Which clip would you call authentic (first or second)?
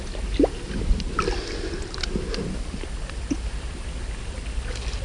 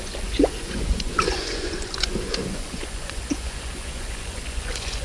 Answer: first